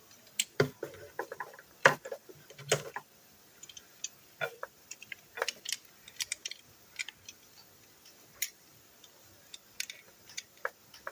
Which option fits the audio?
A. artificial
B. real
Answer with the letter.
B